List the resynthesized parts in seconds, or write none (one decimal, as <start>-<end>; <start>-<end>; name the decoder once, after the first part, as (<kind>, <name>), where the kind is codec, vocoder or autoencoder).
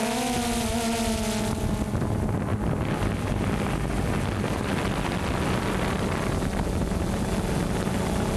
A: none